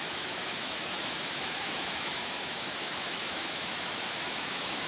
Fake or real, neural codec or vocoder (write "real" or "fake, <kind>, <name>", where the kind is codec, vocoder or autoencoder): fake, autoencoder, DAC-VAE